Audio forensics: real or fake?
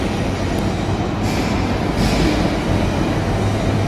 real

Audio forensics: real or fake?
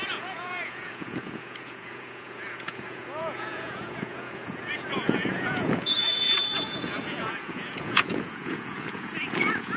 fake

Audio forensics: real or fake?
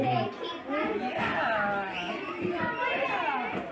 real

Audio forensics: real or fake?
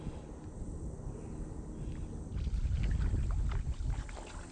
real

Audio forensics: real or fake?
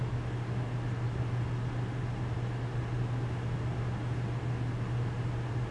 real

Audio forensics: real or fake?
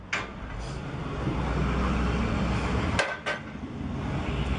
real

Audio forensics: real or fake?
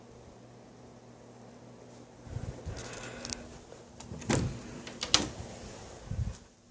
real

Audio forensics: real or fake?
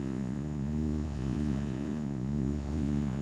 fake